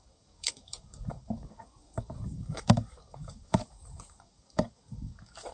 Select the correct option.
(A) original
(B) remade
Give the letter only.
B